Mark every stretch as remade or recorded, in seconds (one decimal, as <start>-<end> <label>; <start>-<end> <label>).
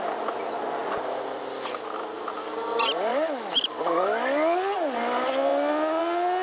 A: 0.0-3.1 recorded; 3.1-3.7 remade; 3.7-6.4 recorded